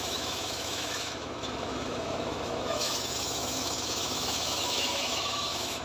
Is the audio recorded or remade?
remade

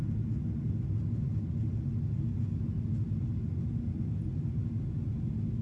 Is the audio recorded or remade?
recorded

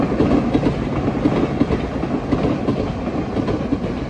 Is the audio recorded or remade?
recorded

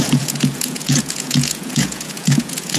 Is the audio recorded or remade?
remade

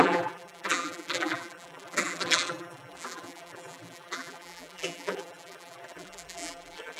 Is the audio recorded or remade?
remade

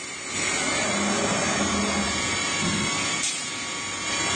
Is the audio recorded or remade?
recorded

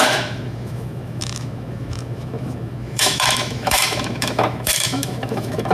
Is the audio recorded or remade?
remade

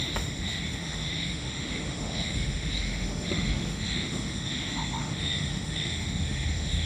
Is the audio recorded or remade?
remade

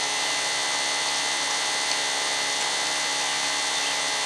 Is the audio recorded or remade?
recorded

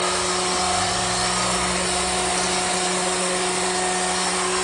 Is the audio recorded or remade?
recorded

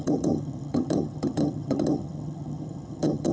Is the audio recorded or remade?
remade